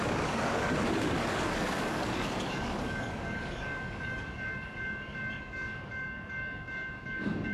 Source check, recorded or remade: remade